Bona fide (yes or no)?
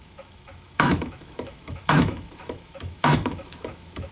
no